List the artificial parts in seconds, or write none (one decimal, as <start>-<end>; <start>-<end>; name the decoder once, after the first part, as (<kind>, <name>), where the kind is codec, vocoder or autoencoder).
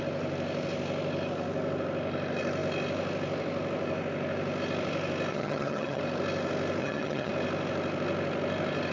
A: 5.3-6.0 (vocoder, HiFi-GAN); 6.8-7.3